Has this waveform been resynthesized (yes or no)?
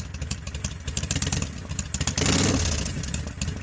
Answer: no